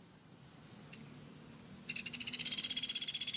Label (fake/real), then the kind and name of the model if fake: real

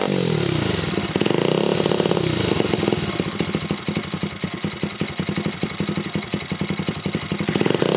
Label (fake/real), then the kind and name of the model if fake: real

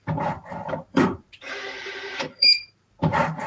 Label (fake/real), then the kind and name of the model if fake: fake, vocoder, BigVGAN v2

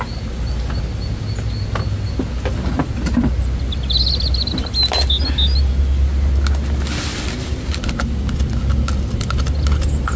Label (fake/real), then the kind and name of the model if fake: real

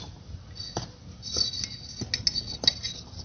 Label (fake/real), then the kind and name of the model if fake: real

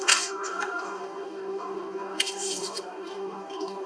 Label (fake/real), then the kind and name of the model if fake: fake, codec, DAC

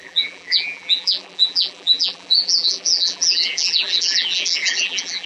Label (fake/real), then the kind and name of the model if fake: fake, vocoder, BigVGAN v2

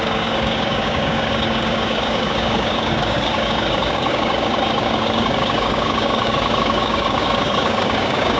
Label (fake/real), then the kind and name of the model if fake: fake, codec, DAC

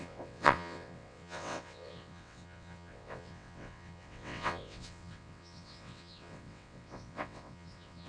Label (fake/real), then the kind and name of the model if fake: fake, vocoder, WaveNeXt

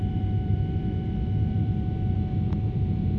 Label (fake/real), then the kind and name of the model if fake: fake, vocoder, BigVGAN v2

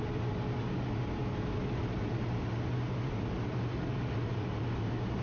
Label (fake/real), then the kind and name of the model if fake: real